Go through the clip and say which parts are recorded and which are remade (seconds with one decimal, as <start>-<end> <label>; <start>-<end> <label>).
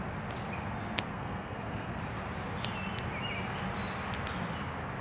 0.0-1.1 recorded; 1.1-2.0 remade; 2.0-5.0 recorded